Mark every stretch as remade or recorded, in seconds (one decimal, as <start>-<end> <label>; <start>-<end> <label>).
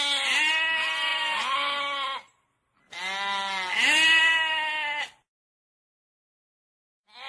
0.0-7.3 recorded